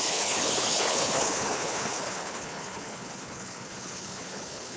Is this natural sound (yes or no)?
no